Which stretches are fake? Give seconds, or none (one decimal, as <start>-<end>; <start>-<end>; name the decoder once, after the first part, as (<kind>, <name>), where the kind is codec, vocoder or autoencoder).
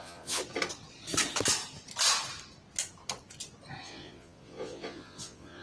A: 0.0-0.4 (vocoder, Vocos); 3.8-5.6